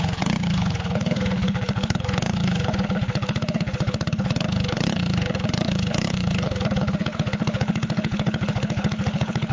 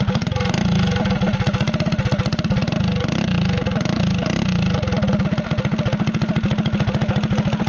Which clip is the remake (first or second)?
first